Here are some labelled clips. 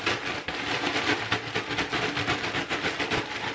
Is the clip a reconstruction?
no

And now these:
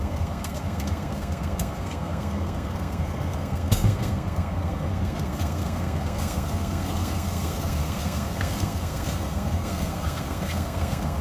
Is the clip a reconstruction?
yes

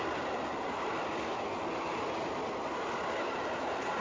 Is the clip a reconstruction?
no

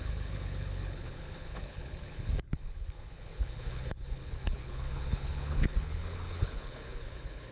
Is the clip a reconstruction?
yes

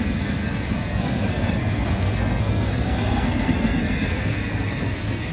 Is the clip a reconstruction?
yes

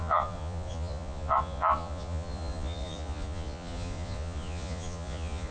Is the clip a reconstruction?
yes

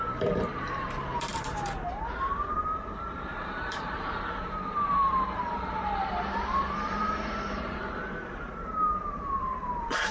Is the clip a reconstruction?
yes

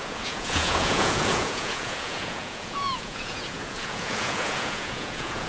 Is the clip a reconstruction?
yes